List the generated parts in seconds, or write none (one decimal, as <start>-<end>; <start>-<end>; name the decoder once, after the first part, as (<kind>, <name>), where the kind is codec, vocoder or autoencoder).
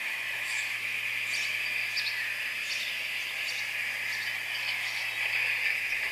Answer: 0.0-1.0 (autoencoder, DAC-VAE); 4.6-5.0